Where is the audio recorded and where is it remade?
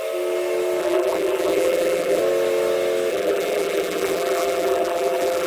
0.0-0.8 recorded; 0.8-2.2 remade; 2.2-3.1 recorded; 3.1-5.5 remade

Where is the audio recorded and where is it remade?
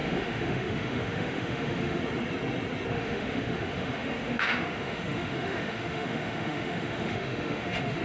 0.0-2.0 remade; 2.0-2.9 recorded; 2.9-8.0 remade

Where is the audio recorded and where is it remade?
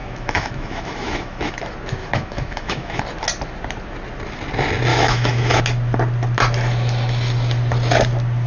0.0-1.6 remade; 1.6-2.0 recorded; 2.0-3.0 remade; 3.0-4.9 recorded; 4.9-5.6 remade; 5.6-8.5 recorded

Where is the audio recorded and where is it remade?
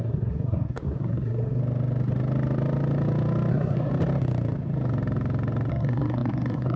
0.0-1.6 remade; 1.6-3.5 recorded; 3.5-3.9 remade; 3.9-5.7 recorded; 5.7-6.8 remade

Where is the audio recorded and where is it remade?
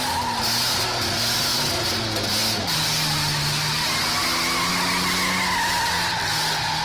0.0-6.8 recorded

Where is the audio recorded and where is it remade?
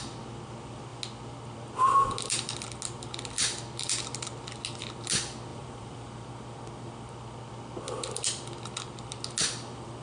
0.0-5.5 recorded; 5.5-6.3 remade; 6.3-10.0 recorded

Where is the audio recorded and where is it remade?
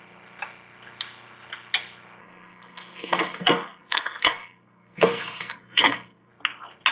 0.0-2.2 recorded; 2.2-6.3 remade; 6.3-6.9 recorded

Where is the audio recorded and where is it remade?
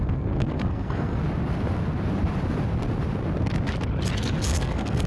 0.0-1.2 remade; 1.2-4.2 recorded; 4.2-5.1 remade